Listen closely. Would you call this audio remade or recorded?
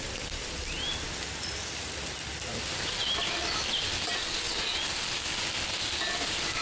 recorded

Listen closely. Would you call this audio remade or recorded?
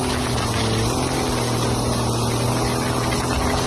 recorded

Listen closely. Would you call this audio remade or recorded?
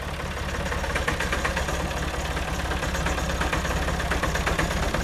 recorded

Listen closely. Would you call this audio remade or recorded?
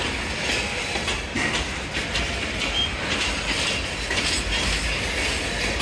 recorded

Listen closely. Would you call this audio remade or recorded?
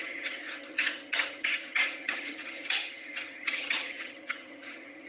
remade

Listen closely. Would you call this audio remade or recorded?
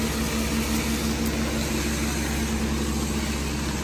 recorded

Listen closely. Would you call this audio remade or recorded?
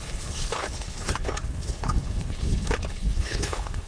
remade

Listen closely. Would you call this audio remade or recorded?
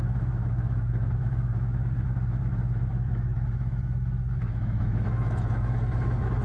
remade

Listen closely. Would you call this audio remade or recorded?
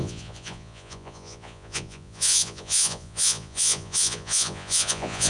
remade